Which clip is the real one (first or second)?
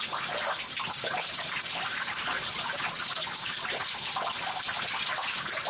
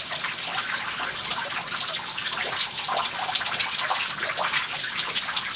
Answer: second